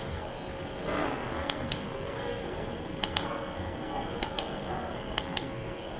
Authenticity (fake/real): fake